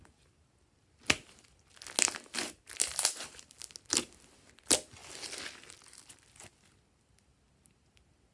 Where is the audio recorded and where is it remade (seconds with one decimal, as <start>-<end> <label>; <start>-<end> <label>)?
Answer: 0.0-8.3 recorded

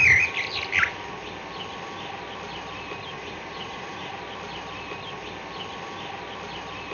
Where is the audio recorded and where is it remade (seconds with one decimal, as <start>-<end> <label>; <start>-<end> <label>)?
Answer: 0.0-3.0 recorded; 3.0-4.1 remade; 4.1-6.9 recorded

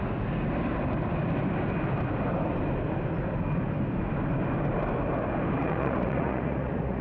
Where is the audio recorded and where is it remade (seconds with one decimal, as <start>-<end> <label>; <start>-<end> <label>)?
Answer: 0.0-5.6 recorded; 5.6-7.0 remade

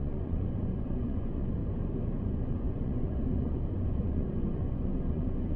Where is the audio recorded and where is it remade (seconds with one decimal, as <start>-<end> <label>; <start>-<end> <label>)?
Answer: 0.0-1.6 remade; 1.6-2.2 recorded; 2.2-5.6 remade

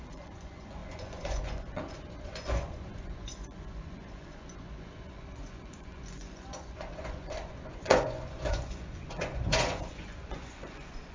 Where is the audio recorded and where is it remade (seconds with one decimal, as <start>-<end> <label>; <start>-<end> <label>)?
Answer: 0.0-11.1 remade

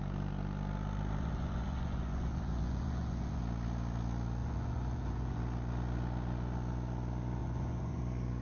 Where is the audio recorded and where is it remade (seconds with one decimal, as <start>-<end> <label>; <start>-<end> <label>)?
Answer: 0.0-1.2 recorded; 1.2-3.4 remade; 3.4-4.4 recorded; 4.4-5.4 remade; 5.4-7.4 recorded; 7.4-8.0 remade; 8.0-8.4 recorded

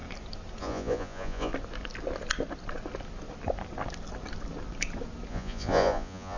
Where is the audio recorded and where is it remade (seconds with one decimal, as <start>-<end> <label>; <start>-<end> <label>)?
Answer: 0.0-0.6 recorded; 0.6-1.5 remade; 1.5-5.3 recorded; 5.3-6.4 remade